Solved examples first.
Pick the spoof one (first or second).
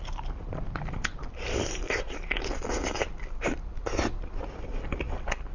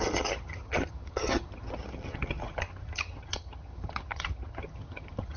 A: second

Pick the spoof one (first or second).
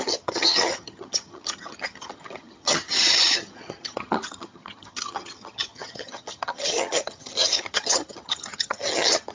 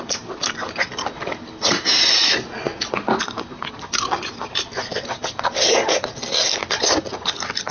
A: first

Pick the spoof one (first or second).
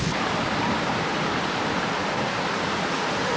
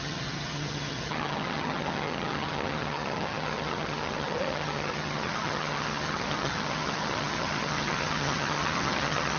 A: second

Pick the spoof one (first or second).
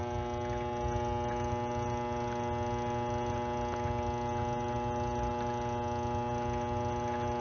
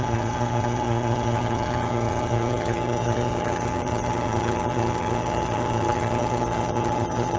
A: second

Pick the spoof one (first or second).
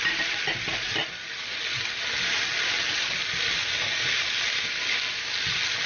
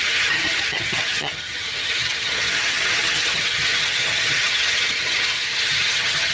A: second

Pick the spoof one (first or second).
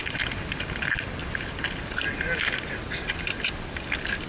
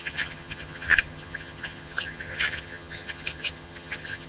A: second